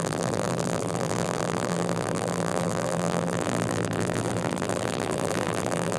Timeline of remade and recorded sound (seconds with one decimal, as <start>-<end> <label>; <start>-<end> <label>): 0.0-6.0 remade